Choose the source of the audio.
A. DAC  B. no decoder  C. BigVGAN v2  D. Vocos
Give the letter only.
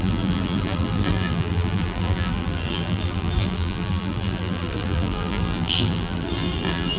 C